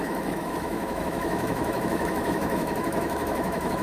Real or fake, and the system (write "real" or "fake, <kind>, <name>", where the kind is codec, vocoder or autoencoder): fake, autoencoder, DAC-VAE